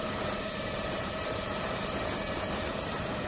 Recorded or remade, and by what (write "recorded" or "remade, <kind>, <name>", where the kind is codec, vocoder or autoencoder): remade, vocoder, BigVGAN v2